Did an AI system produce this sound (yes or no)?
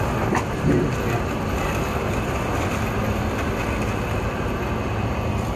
no